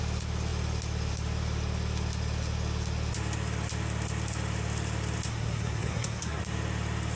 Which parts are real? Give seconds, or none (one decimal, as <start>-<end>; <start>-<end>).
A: 0.0-5.3; 6.4-7.2